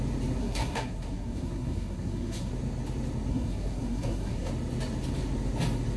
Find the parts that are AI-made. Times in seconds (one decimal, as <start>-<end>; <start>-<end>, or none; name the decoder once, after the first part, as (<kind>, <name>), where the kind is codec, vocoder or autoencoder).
0.4-2.5 (codec, SNAC); 3.3-4.5